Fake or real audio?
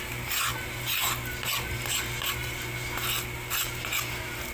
real